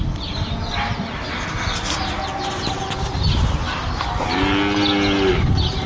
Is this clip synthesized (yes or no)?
no